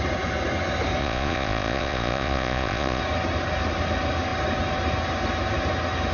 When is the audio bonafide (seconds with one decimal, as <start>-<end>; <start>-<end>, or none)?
0.0-1.0; 3.0-6.1